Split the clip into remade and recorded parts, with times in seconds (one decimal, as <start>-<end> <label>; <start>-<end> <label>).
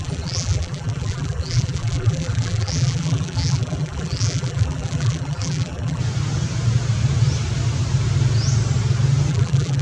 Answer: 0.0-6.0 remade; 6.0-9.3 recorded; 9.3-9.8 remade